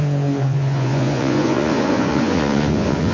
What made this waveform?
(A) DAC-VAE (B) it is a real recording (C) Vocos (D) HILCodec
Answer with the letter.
C